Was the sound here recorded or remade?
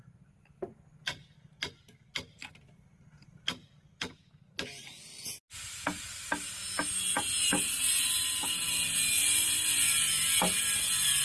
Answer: recorded